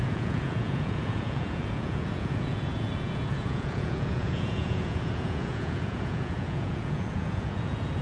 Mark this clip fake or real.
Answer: fake